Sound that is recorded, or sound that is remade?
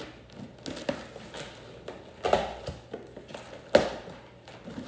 recorded